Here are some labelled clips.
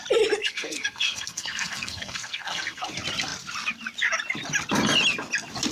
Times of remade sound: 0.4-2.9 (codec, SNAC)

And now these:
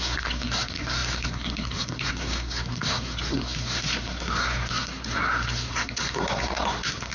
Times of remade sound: 0.0-7.1 (codec, SNAC)

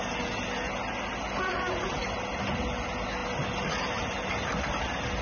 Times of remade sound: none

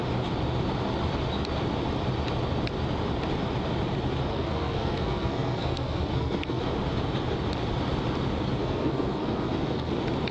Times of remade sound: 4.3-6.6 (codec, SNAC); 8.6-9.9

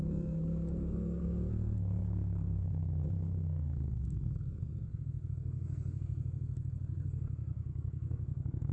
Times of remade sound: 0.0-8.7 (codec, SNAC)

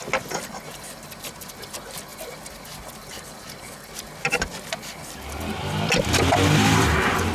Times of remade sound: none

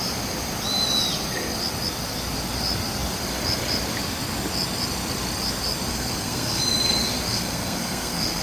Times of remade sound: 5.9-6.6 (codec, SNAC); 7.3-8.4

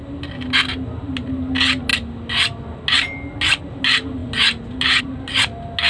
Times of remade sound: none